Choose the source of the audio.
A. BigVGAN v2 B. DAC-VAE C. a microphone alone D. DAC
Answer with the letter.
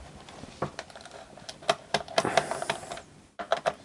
A